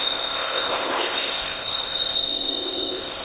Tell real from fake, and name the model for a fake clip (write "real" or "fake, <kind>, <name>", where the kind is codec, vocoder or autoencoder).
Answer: fake, codec, ZipCodec